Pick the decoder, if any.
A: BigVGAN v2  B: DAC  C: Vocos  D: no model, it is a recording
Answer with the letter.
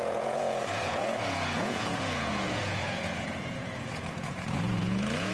C